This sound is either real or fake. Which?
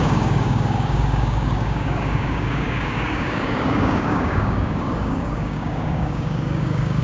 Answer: fake